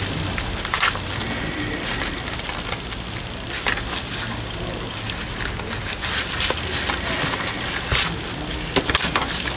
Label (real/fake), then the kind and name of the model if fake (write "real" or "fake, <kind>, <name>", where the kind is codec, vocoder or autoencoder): real